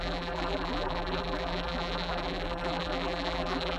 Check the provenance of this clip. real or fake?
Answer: fake